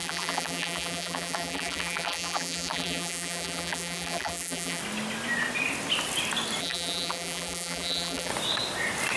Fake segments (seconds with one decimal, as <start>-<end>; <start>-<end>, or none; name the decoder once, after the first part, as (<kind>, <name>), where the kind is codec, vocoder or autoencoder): 0.0-4.8 (vocoder, BigVGAN v2); 6.6-8.3